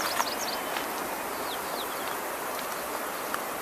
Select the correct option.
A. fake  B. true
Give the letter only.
B